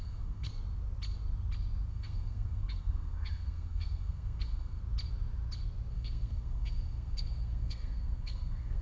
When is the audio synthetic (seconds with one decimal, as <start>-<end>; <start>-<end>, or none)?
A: 0.0-0.5; 1.9-4.8; 5.9-8.8